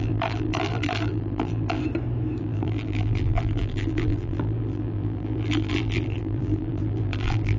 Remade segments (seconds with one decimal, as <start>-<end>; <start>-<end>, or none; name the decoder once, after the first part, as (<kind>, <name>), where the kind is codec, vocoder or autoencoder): 0.0-1.8 (vocoder, BigVGAN v2); 2.4-7.6